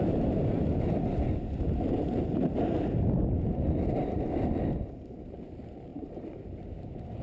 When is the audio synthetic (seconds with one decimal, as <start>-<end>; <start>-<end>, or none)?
5.9-6.7